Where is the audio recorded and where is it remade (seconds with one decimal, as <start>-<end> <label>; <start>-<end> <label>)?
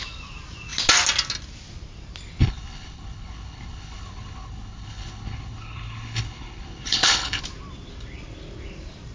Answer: 0.0-2.4 recorded; 2.4-7.4 remade; 7.4-9.1 recorded